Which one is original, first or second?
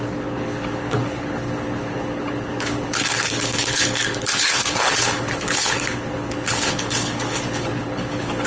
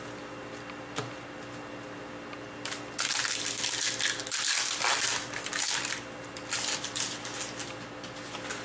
second